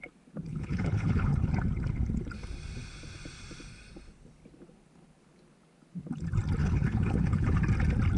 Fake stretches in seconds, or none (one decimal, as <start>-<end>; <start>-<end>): 0.5-1.5; 6.6-7.6